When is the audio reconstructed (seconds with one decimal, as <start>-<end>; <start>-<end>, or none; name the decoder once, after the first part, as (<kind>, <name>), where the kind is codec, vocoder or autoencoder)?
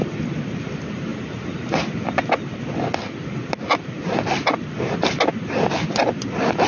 none